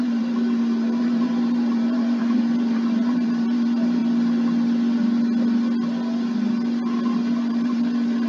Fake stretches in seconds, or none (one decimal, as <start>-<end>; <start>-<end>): 0.0-4.0; 7.5-8.3